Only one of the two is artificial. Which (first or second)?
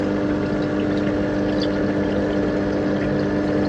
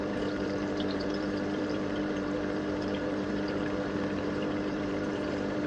second